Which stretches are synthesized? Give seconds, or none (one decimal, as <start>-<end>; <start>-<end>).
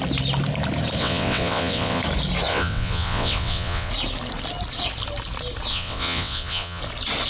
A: 1.0-2.0; 2.5-3.9; 5.7-6.8